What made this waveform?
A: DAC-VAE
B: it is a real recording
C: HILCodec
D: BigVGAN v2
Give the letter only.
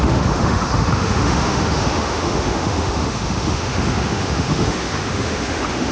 A